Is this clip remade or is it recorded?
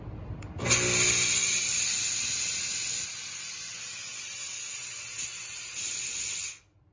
recorded